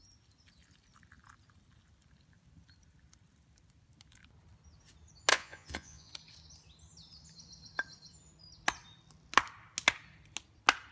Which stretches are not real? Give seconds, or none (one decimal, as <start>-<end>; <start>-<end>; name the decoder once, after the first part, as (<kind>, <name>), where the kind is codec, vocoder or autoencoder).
5.3-6.1 (vocoder, Vocos)